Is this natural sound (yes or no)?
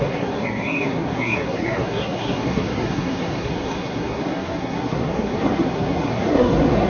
no